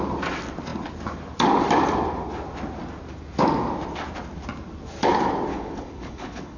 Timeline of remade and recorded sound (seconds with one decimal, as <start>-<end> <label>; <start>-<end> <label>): 0.0-5.5 recorded; 5.5-6.6 remade